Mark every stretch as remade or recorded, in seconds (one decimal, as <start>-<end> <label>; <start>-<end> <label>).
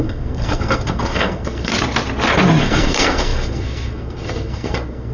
0.0-1.7 remade; 1.7-2.6 recorded; 2.6-5.1 remade